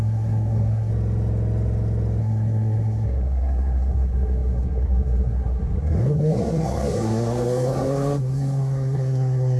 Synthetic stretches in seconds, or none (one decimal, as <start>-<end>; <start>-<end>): 0.0-0.9; 2.2-9.6